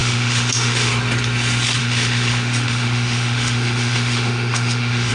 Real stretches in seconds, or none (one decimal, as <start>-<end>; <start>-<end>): 0.9-1.8